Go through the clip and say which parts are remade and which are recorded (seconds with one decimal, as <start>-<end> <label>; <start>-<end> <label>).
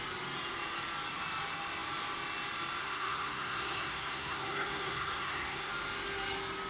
0.0-2.8 recorded; 2.8-5.7 remade; 5.7-6.7 recorded